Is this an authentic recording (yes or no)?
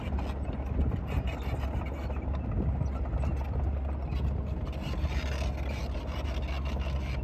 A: yes